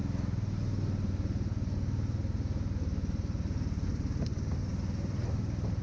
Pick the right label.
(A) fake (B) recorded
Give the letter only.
B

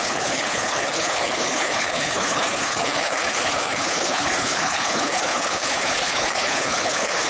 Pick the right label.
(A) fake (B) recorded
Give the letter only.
A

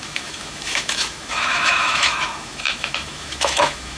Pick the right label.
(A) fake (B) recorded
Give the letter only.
A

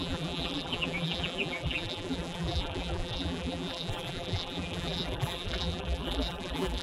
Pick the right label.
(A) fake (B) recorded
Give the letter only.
A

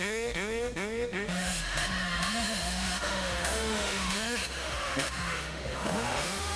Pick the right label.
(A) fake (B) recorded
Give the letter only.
A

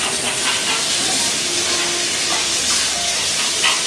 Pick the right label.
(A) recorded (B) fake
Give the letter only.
A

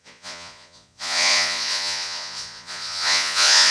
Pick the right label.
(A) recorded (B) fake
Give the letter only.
B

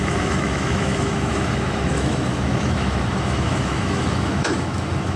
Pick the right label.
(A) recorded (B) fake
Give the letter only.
B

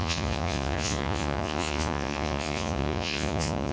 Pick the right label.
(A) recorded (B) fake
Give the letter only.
B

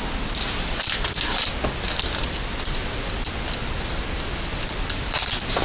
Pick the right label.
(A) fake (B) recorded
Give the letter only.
B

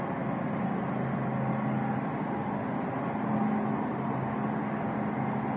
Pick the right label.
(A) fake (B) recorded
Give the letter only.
B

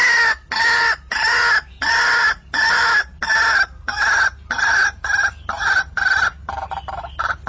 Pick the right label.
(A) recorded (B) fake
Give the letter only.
B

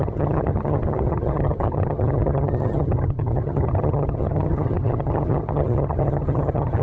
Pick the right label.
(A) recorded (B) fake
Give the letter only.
B